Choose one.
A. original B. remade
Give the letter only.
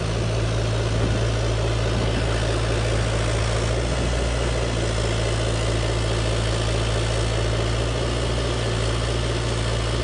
A